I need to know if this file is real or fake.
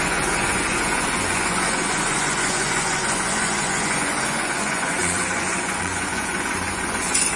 fake